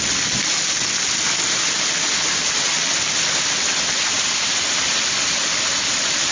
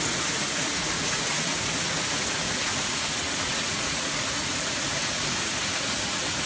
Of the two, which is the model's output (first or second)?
second